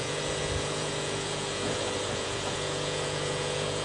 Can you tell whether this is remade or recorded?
remade